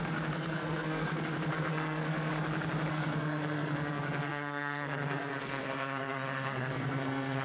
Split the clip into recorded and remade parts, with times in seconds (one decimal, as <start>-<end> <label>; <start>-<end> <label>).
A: 0.0-2.3 remade; 2.3-2.9 recorded; 2.9-7.4 remade